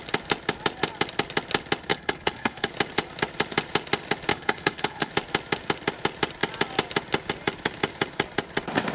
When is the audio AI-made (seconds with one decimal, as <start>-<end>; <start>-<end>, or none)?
1.9-2.7; 4.3-5.1